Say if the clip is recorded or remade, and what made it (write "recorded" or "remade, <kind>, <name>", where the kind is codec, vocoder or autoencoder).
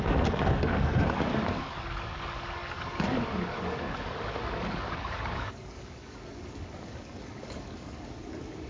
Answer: remade, codec, DAC